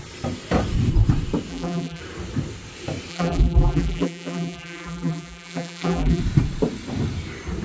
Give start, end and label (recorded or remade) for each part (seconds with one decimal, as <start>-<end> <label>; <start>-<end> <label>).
0.0-1.5 recorded; 1.5-2.0 remade; 2.0-3.1 recorded; 3.1-6.2 remade; 6.2-7.6 recorded